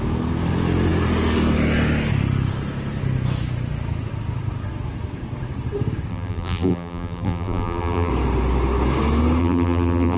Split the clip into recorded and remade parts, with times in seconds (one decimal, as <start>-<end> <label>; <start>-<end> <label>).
0.0-6.1 recorded; 6.1-8.1 remade; 8.1-9.4 recorded; 9.4-10.2 remade